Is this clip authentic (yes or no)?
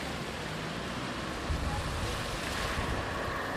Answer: yes